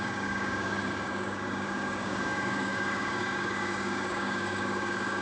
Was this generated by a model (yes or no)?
yes